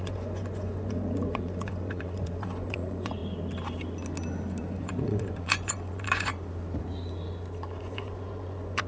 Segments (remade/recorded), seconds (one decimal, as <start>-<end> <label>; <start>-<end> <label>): 0.0-3.2 remade; 3.2-4.6 recorded; 4.6-6.3 remade; 6.3-7.8 recorded; 7.8-8.9 remade